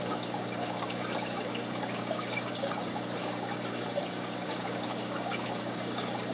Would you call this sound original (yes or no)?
no